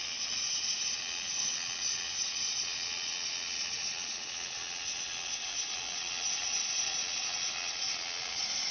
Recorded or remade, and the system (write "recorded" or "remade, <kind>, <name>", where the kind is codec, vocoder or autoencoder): remade, vocoder, Vocos